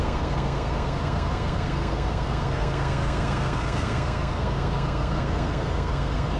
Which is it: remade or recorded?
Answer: remade